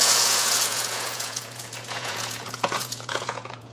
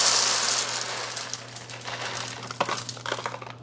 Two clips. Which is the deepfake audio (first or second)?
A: first